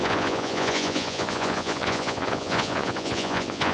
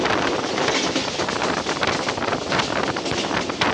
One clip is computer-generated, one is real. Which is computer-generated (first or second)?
first